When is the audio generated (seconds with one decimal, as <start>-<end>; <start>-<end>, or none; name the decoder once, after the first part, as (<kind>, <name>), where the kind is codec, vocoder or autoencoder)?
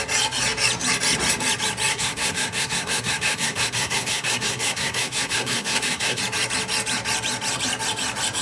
1.9-6.2 (codec, SNAC)